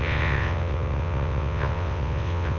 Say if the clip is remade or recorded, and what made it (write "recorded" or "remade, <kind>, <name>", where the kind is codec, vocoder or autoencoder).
remade, vocoder, WaveNeXt